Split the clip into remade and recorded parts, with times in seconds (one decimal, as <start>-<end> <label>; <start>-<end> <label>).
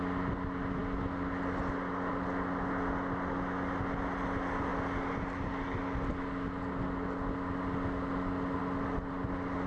0.0-9.7 recorded